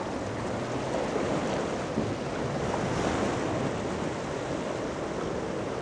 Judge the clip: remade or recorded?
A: recorded